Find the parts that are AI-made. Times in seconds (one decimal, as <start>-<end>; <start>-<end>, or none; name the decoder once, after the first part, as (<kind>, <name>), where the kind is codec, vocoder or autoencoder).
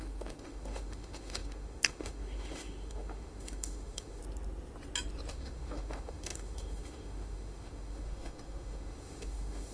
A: 0.0-4.2 (autoencoder, DAC-VAE); 5.3-9.7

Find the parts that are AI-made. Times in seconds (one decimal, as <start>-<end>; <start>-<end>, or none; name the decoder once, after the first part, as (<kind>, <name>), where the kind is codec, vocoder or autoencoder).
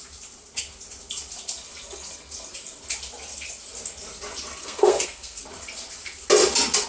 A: 4.6-5.4 (codec, SNAC)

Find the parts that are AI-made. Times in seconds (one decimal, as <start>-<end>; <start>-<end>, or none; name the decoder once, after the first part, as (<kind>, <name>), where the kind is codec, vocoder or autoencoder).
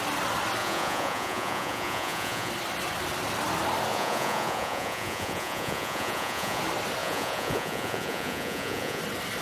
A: 0.6-2.5 (vocoder, Vocos); 3.9-6.6; 7.0-9.0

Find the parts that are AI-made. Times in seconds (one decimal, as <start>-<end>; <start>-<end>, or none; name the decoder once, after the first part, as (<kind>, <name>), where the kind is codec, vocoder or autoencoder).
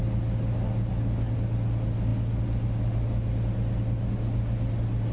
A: none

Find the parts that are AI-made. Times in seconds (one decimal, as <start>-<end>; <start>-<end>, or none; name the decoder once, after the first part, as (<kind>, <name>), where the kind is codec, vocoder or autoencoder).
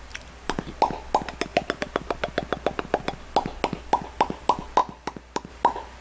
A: none